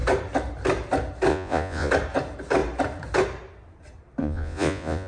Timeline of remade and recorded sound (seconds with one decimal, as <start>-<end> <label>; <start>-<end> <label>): 0.0-1.3 recorded; 1.3-1.9 remade; 1.9-4.2 recorded; 4.2-5.1 remade

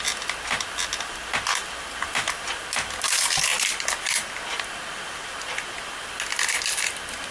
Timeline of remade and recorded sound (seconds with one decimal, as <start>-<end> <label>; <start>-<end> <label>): 0.0-7.3 recorded

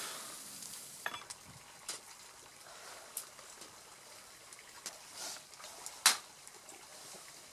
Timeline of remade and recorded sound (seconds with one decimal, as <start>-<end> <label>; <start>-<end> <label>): 0.0-7.5 recorded

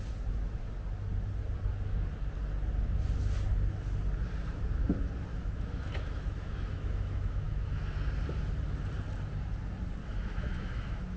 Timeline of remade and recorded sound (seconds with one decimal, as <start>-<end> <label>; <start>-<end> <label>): 0.0-5.3 recorded; 5.3-7.9 remade; 7.9-10.0 recorded; 10.0-11.2 remade

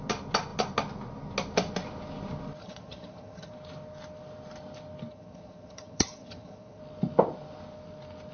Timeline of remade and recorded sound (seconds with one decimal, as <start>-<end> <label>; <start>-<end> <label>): 0.0-2.6 recorded; 2.6-3.5 remade; 3.5-5.1 recorded; 5.1-6.8 remade; 6.8-8.3 recorded

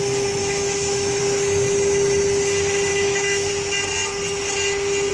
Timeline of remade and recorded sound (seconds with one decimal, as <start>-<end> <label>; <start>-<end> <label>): 0.0-0.4 recorded; 0.4-1.2 remade; 1.2-2.9 recorded; 2.9-3.5 remade; 3.5-5.1 recorded

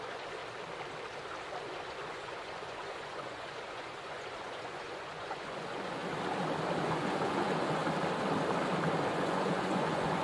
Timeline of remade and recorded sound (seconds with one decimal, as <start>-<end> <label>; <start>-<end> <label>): 0.0-0.4 remade; 0.4-1.6 recorded; 1.6-6.0 remade; 6.0-6.8 recorded; 6.8-7.8 remade; 7.8-9.1 recorded; 9.1-10.2 remade

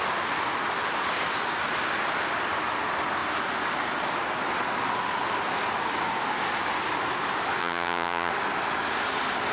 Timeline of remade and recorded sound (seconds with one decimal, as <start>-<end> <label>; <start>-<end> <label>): 0.0-7.6 recorded; 7.6-8.3 remade; 8.3-9.5 recorded